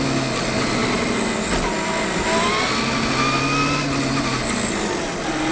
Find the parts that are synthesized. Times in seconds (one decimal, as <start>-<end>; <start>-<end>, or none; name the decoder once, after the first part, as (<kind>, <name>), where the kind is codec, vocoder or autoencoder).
none